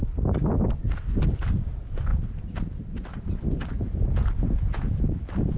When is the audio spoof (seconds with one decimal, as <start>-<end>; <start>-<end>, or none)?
none